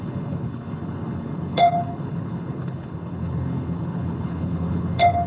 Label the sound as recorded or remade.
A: remade